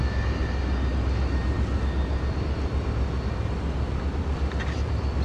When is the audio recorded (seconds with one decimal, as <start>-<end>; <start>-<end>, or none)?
0.0-5.2